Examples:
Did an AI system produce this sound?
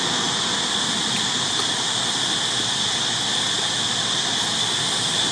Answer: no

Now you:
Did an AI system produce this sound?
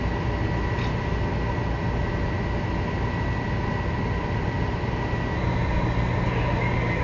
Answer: no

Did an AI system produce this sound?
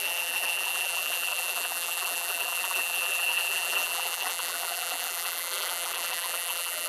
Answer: yes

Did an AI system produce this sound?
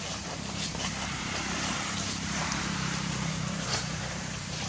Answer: yes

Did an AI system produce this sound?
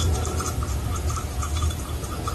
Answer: yes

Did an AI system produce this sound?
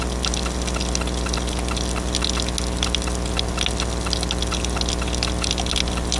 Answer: no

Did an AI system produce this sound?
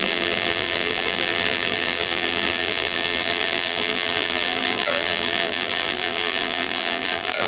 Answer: yes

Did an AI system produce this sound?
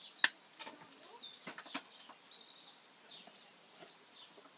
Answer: no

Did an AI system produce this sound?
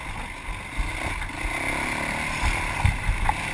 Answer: no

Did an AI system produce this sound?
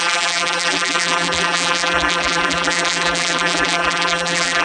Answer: yes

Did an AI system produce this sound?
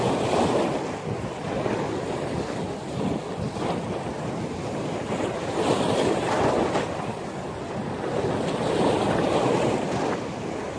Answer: no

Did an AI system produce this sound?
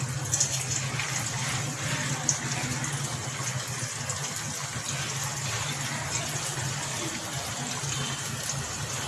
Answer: no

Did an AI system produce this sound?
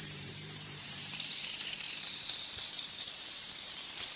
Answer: yes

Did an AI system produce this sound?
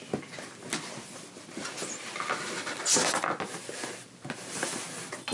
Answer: no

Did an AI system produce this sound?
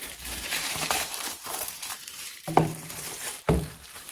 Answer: yes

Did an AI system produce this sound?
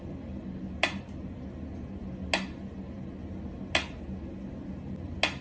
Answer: no